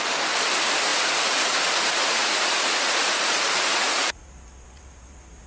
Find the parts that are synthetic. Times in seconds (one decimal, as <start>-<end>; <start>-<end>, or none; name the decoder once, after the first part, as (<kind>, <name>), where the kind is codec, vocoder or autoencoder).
0.9-4.2 (vocoder, Vocos)

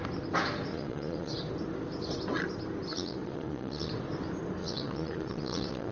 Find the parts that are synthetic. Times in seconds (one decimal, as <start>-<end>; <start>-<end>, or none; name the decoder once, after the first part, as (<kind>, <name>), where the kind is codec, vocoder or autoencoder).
0.7-1.3 (vocoder, Vocos); 2.9-3.9; 4.6-5.9

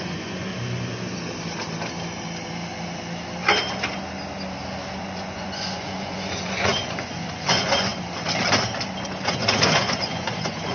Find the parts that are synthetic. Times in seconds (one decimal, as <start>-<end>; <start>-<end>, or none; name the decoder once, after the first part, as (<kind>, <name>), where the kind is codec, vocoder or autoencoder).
0.0-0.5 (vocoder, Vocos); 5.0-7.9; 9.2-10.7

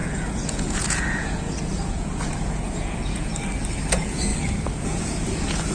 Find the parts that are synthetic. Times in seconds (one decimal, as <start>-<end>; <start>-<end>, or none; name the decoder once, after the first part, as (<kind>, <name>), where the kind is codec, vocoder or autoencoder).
0.0-3.3 (vocoder, Vocos); 3.9-4.3; 4.8-5.7

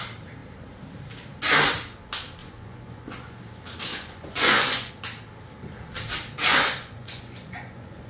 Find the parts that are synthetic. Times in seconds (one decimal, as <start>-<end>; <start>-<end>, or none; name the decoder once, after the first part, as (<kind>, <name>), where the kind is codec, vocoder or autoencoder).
2.4-3.4 (vocoder, Vocos); 3.9-4.9; 6.5-8.1

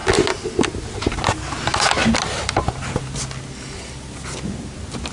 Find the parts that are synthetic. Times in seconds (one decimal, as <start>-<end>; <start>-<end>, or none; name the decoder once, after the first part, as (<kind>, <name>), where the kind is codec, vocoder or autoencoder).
none